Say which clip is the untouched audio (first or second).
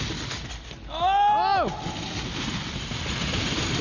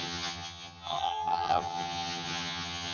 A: first